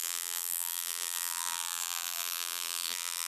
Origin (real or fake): fake